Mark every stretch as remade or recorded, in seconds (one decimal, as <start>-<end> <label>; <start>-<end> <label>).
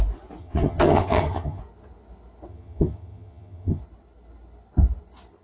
0.0-0.4 recorded; 0.4-1.6 remade; 1.6-2.5 recorded; 2.5-3.8 remade; 3.8-5.4 recorded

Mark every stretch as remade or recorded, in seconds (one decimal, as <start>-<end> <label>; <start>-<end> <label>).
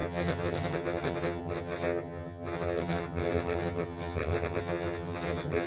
0.0-5.7 remade